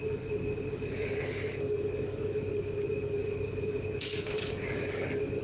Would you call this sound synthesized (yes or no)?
yes